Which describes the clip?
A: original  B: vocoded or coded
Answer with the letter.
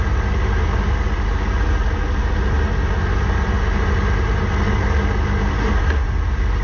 A